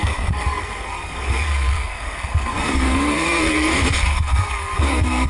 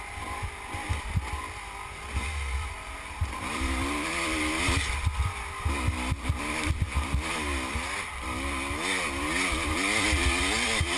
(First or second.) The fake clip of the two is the first